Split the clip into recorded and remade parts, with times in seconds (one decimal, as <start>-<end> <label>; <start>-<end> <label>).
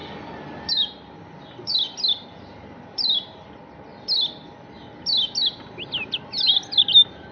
0.0-1.7 remade; 1.7-2.4 recorded; 2.4-3.9 remade; 3.9-7.3 recorded